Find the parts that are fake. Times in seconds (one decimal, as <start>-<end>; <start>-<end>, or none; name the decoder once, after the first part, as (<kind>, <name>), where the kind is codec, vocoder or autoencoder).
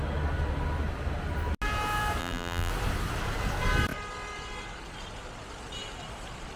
2.2-2.7 (vocoder, BigVGAN v2)